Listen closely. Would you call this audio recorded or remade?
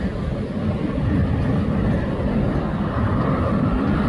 recorded